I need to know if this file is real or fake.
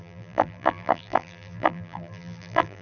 fake